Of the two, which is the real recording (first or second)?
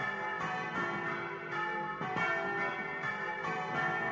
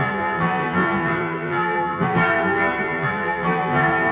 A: first